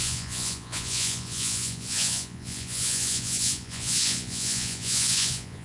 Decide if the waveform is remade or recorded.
remade